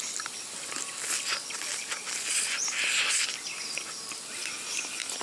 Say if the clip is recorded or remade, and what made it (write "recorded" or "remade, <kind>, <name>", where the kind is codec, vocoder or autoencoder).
recorded